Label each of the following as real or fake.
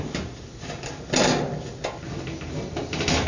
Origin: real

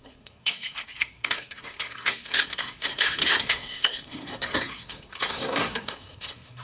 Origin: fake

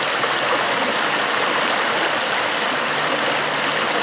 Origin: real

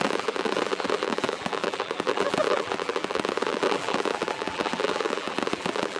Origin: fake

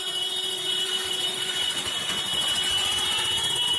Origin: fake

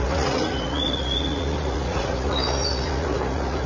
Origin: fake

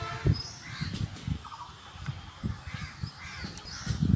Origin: real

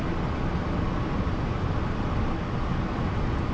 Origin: real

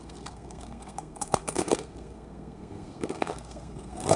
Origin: fake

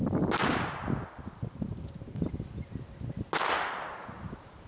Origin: real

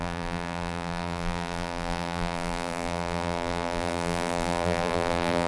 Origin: fake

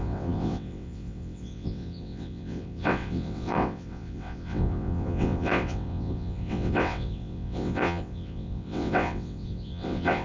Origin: fake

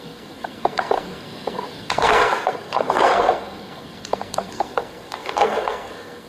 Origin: fake